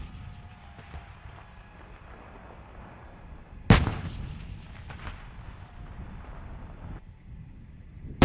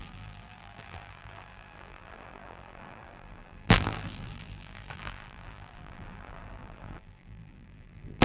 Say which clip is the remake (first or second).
second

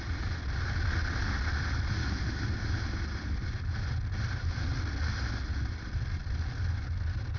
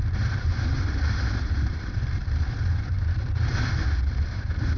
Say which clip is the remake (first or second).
second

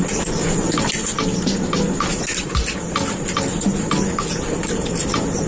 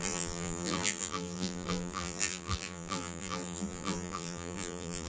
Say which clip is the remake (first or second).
second